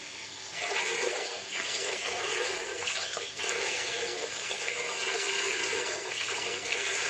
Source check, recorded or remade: remade